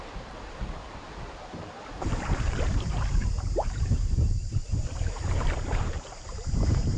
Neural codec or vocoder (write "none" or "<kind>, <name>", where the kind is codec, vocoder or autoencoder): vocoder, BigVGAN v2